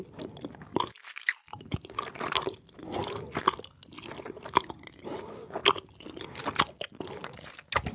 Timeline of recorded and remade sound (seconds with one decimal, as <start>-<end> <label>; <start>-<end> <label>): 0.0-0.7 recorded; 0.7-1.4 remade; 1.4-7.9 recorded